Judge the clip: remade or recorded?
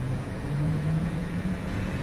remade